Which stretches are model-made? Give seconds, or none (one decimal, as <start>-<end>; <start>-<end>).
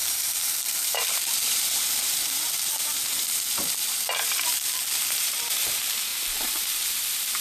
0.0-7.4